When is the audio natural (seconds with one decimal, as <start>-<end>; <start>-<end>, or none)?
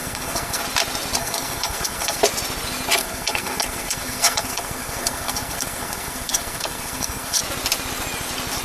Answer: 0.6-1.2; 2.2-3.0; 7.4-8.6